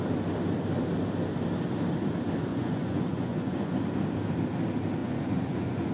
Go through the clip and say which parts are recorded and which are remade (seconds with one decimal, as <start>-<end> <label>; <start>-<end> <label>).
0.0-2.5 recorded; 2.5-3.8 remade; 3.8-5.0 recorded; 5.0-5.9 remade